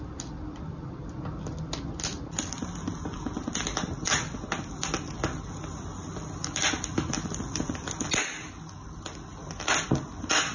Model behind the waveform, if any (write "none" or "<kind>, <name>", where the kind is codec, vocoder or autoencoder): none